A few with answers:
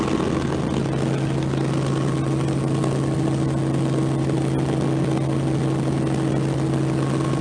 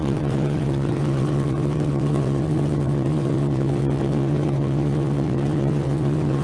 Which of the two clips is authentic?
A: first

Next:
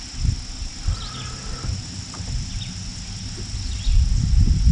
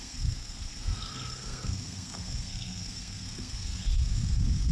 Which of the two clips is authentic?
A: first